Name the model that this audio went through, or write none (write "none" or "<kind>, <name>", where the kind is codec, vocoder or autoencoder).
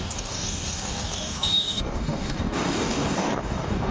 codec, DAC